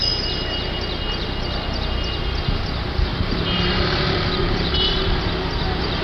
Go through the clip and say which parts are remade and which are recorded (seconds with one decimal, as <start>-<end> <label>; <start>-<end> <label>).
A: 0.0-3.1 recorded; 3.1-5.3 remade; 5.3-6.0 recorded